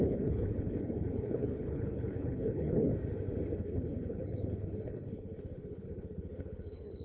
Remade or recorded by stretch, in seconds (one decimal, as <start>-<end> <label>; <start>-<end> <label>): 0.0-2.9 remade; 2.9-3.6 recorded; 3.6-7.0 remade